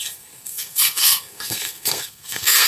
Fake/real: fake